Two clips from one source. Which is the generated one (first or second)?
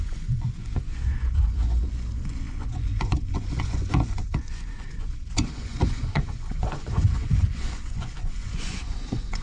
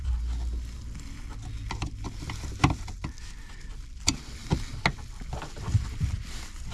first